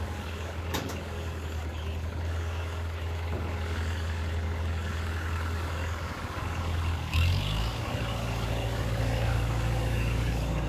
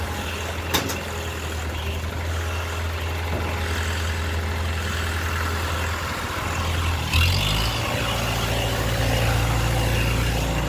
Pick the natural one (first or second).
second